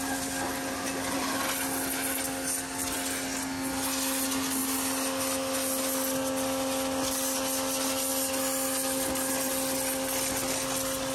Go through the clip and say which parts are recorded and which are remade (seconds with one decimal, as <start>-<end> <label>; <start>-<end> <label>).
0.0-11.1 recorded